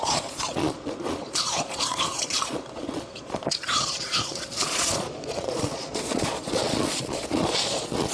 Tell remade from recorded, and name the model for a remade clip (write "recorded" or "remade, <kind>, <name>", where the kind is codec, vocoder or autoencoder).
remade, vocoder, Vocos